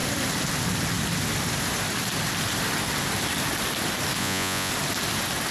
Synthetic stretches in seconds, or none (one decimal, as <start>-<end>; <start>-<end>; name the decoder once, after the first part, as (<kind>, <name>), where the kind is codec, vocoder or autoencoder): 4.2-4.7 (vocoder, Vocos)